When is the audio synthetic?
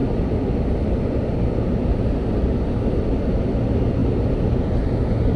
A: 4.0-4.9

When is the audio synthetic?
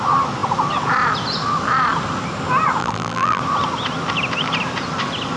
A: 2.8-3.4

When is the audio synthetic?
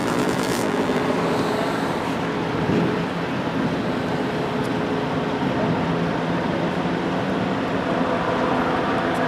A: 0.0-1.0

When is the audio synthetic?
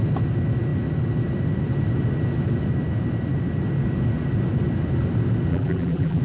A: 5.5-6.2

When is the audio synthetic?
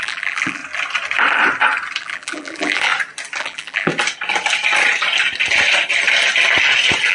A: 0.0-0.6; 2.0-2.9; 3.4-3.9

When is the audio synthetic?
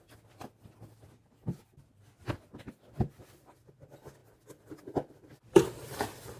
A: none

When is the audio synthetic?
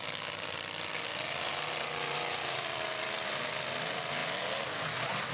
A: 1.5-2.9